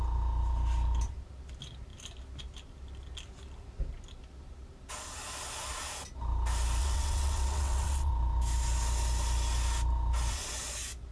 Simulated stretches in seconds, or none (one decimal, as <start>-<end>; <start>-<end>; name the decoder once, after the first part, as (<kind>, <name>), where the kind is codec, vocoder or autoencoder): 6.8-8.1 (vocoder, WaveNeXt)